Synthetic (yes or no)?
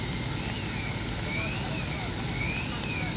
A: no